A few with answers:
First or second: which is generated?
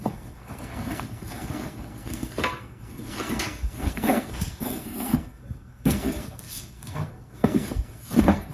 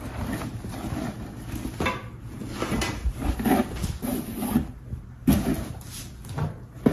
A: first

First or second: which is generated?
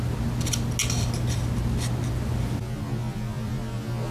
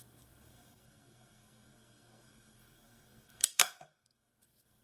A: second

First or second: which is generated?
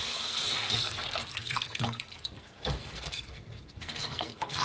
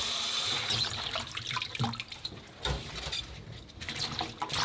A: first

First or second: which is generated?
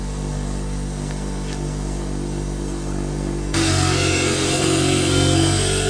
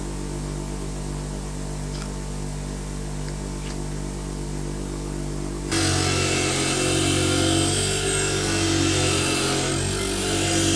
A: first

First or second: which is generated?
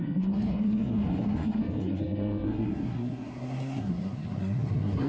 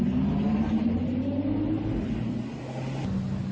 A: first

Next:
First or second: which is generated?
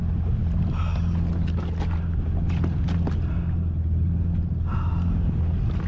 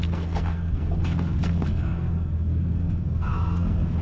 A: second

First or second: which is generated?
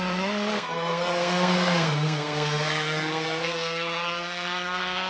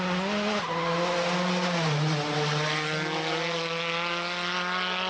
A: first